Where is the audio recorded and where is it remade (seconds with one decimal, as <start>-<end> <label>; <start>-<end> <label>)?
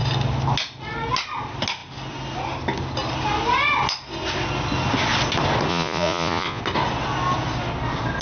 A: 0.0-5.7 recorded; 5.7-6.6 remade; 6.6-8.2 recorded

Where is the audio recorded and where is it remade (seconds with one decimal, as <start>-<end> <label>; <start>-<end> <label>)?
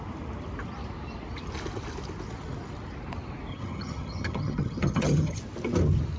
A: 0.0-3.5 recorded; 3.5-5.4 remade; 5.4-6.2 recorded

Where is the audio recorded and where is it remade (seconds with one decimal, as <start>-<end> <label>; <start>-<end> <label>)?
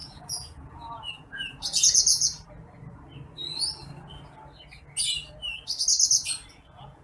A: 0.0-2.3 remade; 2.3-6.5 recorded; 6.5-7.0 remade